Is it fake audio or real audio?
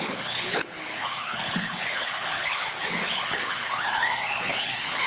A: fake